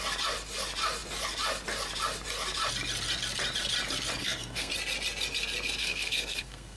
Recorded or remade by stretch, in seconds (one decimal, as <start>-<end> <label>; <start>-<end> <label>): 0.0-4.2 recorded; 4.2-4.7 remade; 4.7-5.8 recorded; 5.8-6.8 remade